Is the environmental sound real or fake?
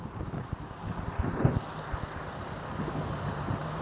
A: real